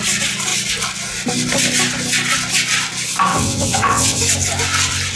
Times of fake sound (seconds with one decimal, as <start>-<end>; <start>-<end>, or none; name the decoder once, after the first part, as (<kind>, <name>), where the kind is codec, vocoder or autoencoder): 3.3-4.2 (vocoder, WaveNeXt)